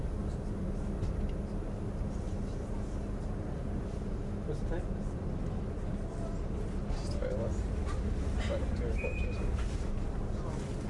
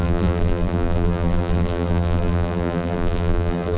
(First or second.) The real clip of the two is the first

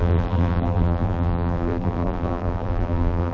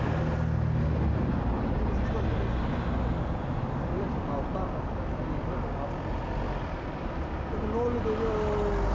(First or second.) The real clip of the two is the second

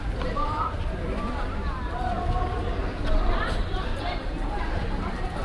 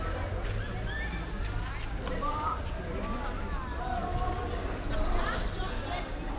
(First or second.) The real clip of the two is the second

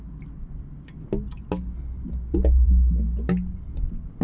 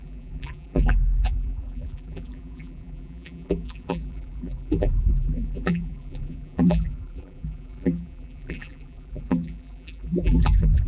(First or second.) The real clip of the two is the first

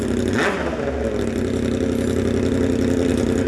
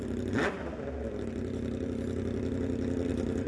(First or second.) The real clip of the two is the first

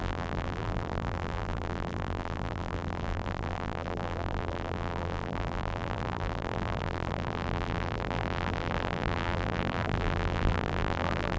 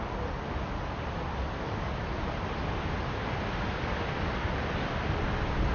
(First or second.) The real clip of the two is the second